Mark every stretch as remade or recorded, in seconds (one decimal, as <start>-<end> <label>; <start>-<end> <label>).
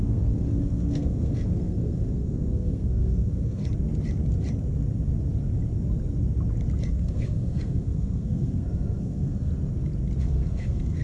0.0-3.6 remade; 3.6-6.9 recorded; 6.9-9.5 remade; 9.5-10.2 recorded; 10.2-11.0 remade